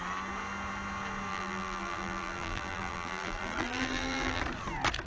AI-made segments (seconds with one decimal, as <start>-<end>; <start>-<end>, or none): 1.3-4.4